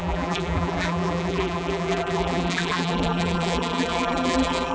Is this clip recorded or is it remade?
remade